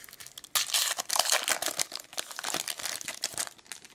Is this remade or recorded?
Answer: recorded